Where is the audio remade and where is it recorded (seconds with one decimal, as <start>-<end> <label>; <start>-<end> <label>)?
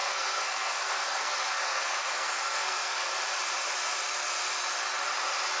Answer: 0.0-3.1 remade; 3.1-5.6 recorded